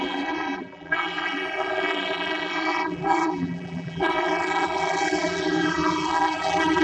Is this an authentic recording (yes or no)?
no